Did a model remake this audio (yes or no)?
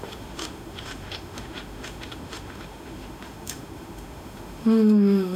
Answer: yes